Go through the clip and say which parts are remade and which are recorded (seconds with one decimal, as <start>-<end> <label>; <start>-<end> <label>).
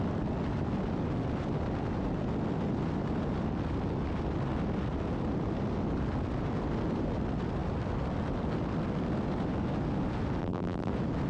0.0-10.4 recorded; 10.4-10.9 remade; 10.9-11.3 recorded